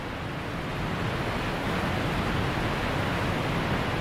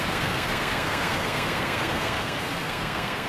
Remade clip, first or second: second